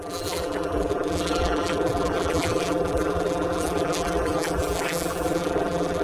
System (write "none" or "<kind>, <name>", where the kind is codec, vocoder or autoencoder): vocoder, BigVGAN v2